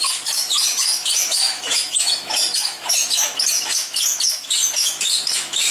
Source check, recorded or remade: remade